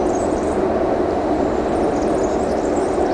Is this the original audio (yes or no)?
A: yes